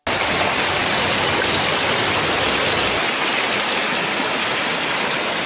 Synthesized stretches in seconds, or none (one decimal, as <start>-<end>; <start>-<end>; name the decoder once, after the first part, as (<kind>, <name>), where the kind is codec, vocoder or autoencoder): none